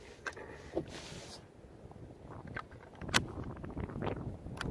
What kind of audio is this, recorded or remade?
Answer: recorded